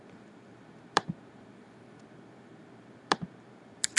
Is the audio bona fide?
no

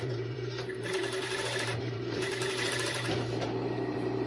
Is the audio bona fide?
no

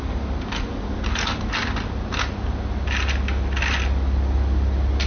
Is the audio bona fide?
yes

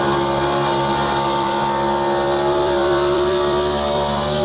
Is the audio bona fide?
no